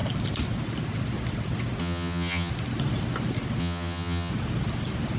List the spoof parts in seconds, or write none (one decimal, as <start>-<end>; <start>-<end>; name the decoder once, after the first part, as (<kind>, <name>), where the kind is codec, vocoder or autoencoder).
1.8-2.5 (vocoder, HiFi-GAN); 3.6-4.3